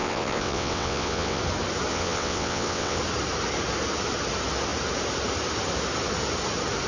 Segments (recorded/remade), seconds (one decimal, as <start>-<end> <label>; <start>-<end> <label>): 0.0-1.4 remade; 1.4-1.9 recorded; 1.9-3.0 remade; 3.0-6.9 recorded